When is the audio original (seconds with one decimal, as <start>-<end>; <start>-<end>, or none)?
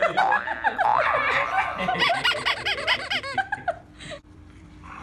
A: 0.0-5.0